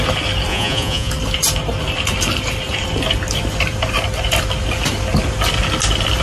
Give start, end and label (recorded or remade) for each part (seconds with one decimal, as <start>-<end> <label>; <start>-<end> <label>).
0.0-0.5 recorded; 0.5-1.1 remade; 1.1-6.2 recorded